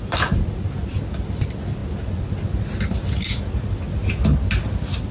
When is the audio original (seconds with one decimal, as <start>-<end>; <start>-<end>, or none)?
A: 1.8-5.1